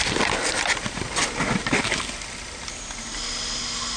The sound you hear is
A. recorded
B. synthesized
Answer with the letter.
A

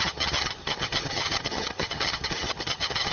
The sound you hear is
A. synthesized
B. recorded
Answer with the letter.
A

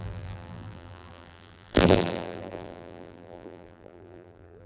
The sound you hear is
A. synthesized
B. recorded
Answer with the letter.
A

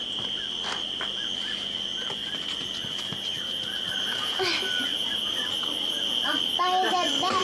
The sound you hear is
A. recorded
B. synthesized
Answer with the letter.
A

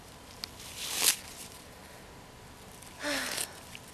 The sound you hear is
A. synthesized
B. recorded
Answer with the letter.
B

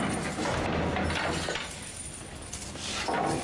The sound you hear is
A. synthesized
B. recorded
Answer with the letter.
B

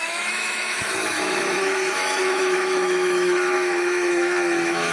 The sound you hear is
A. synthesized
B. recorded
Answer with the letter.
A